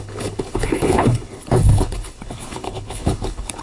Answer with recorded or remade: remade